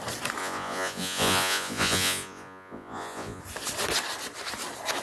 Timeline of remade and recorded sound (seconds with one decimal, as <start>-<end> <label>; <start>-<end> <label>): 0.0-0.4 recorded; 0.4-3.4 remade; 3.4-5.0 recorded